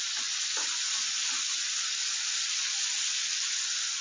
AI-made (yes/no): no